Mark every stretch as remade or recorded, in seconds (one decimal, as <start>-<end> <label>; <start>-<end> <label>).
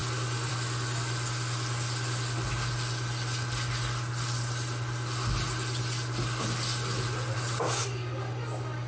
0.0-8.9 recorded